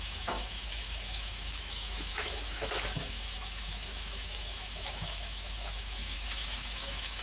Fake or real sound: fake